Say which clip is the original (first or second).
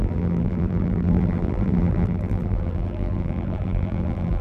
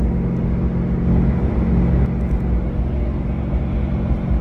second